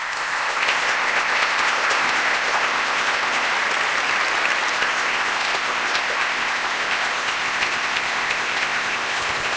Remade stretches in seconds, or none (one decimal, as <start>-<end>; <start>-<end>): 0.0-3.5; 4.7-9.6